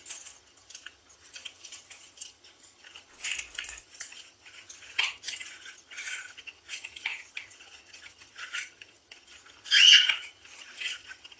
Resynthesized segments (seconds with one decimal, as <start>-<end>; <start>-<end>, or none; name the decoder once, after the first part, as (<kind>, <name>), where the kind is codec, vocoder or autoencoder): 0.0-3.1 (vocoder, HiFi-GAN); 3.8-11.4